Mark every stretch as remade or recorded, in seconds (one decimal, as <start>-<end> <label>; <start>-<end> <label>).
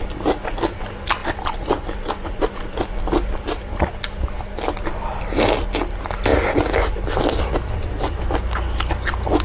0.0-1.2 recorded; 1.2-3.9 remade; 3.9-9.4 recorded